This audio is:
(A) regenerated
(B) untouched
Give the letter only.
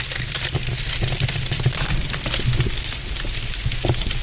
B